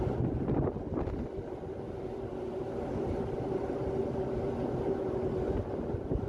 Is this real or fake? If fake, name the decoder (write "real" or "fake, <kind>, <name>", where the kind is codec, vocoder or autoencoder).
real